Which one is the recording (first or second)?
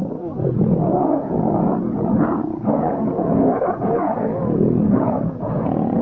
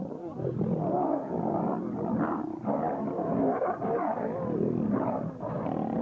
second